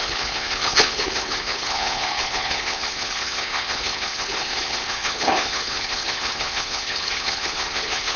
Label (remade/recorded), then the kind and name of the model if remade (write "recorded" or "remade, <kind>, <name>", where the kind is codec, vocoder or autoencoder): remade, codec, HILCodec